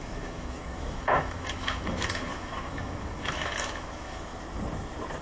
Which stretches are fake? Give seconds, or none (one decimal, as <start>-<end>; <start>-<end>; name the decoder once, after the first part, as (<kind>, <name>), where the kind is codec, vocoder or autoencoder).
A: 0.0-4.3 (autoencoder, DAC-VAE)